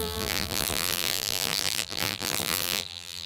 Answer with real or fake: fake